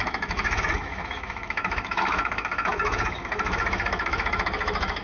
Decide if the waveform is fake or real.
fake